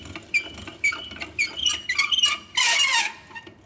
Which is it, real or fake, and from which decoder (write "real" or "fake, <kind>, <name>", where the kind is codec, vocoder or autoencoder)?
real